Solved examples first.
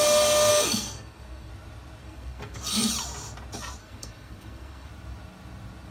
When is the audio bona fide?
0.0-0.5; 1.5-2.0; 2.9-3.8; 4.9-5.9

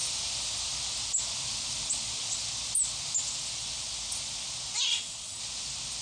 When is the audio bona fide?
0.0-4.9; 5.4-6.0

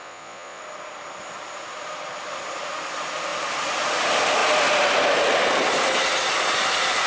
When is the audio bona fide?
0.6-7.1

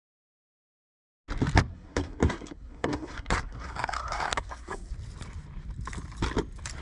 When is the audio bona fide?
0.0-1.7; 4.9-6.8

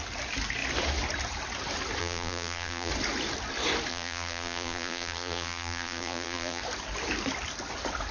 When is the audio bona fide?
0.0-2.0; 2.9-3.9; 6.6-8.1

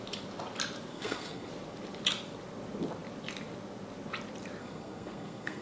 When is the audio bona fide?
0.0-0.9; 1.5-4.6

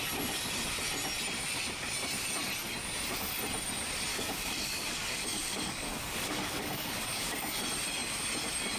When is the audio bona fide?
0.0-4.1; 7.6-8.8

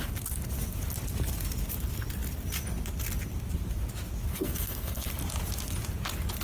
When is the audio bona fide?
0.0-4.3; 5.1-6.4